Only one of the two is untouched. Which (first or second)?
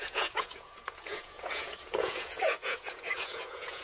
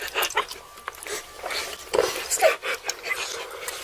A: second